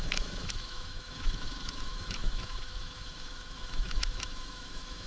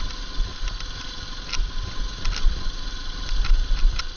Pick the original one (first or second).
second